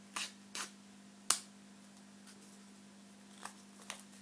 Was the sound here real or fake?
real